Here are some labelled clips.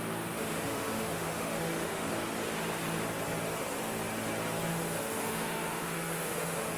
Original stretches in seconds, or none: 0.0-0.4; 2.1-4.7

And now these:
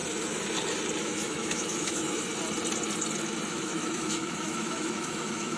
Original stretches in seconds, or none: 0.0-1.0; 2.3-3.5

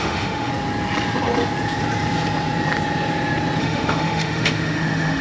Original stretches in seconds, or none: 0.5-3.6

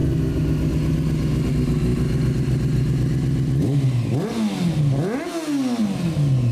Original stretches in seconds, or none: 0.0-6.5

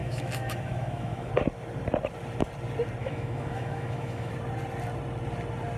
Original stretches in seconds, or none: 1.3-3.0; 4.3-5.8

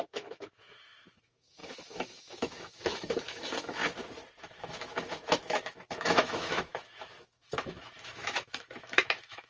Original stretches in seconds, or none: 3.8-4.4

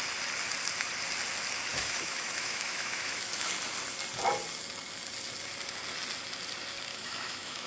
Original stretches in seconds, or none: 0.0-1.7; 3.5-6.9